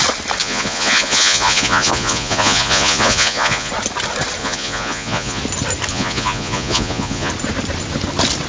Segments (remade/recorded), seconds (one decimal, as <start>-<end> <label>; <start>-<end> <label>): 0.0-0.4 recorded; 0.4-3.7 remade; 3.7-4.4 recorded; 4.4-5.4 remade; 5.4-5.9 recorded; 5.9-7.3 remade; 7.3-8.5 recorded